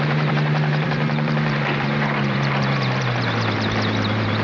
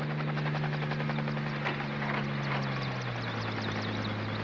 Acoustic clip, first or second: second